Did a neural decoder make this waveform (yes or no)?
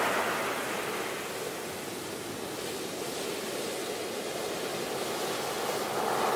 no